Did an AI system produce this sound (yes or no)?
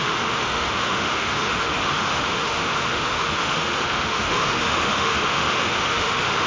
yes